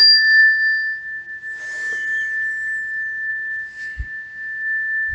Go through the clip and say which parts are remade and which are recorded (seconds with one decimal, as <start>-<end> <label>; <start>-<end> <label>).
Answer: 0.0-5.1 recorded